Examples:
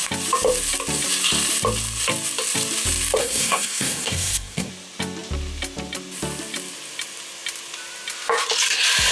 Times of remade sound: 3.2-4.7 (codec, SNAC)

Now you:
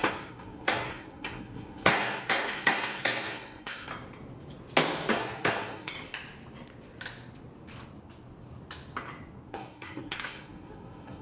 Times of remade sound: 0.0-3.9 (codec, SNAC); 5.1-5.9; 9.5-11.2

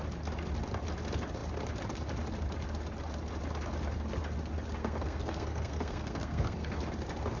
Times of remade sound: 4.8-6.8 (codec, SNAC)

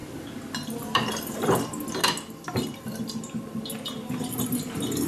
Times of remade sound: none

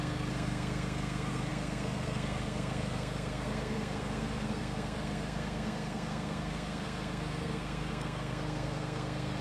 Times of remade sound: 0.0-9.4 (codec, SNAC)